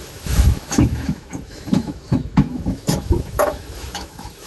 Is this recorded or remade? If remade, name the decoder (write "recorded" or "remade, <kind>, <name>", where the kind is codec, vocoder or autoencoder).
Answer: remade, autoencoder, DAC-VAE